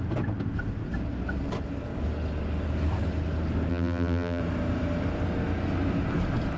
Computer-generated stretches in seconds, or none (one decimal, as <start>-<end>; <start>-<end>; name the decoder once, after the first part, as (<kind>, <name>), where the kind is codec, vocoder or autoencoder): 3.7-4.4 (vocoder, BigVGAN v2)